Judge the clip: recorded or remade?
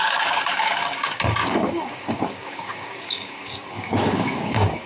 remade